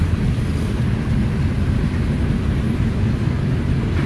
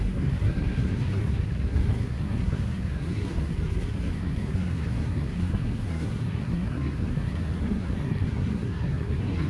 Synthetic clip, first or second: second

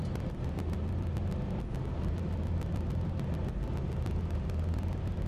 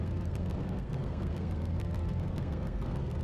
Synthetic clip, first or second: second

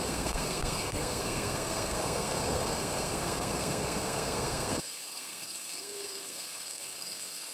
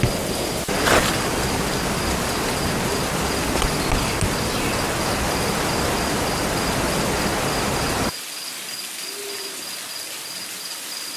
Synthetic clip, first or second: first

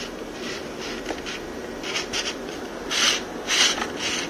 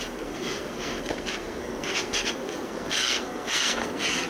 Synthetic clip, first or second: second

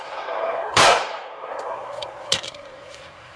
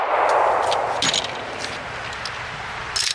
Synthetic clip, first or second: first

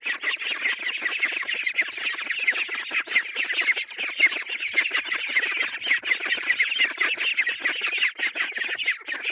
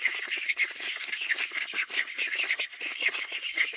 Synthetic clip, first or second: second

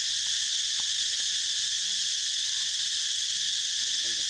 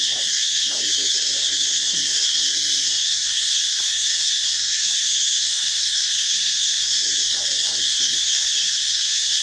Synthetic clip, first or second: second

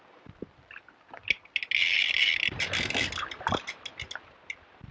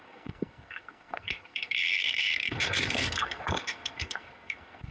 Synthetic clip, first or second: second